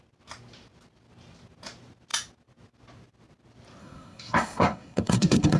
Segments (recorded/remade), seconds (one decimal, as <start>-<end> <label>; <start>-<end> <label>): 0.0-3.8 recorded; 3.8-5.6 remade